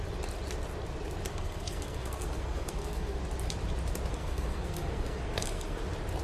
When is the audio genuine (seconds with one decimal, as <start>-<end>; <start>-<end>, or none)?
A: 0.0-1.3; 3.2-4.1; 5.8-6.2